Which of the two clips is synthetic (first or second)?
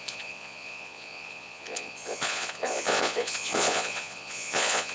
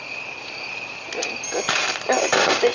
first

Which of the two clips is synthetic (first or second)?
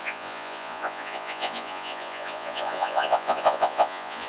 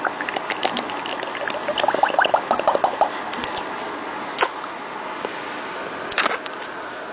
first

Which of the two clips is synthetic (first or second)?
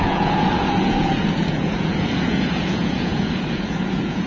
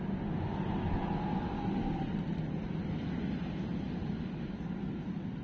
first